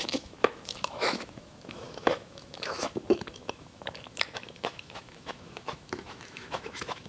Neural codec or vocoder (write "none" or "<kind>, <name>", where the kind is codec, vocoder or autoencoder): autoencoder, DAC-VAE